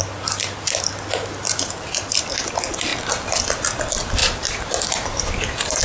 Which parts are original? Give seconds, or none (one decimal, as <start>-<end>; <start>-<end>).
0.0-1.4; 2.2-4.2